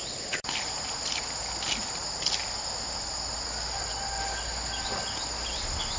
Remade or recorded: recorded